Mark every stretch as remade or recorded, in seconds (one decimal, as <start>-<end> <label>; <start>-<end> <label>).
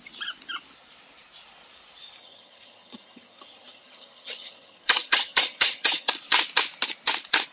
0.0-2.2 recorded; 2.2-6.1 remade; 6.1-7.5 recorded